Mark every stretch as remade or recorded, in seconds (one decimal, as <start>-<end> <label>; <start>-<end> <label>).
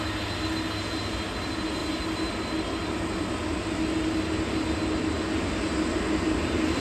0.0-6.8 recorded